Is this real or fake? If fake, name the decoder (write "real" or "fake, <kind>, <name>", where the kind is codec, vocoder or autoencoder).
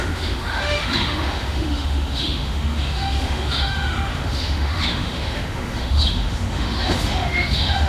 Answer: fake, autoencoder, DAC-VAE